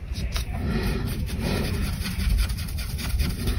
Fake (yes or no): yes